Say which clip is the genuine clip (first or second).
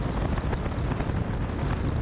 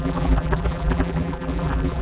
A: first